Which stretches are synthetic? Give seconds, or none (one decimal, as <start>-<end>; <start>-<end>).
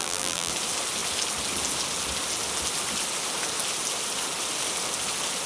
0.0-0.5